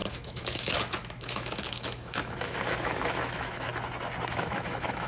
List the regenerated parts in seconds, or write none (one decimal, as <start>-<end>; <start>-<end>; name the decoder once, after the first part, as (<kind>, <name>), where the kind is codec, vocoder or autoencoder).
0.0-3.7 (autoencoder, DAC-VAE); 4.3-5.1